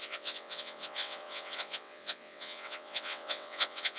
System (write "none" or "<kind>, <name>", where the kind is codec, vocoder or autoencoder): vocoder, WaveNeXt